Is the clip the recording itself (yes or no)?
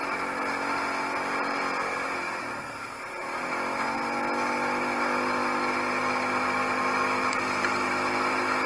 yes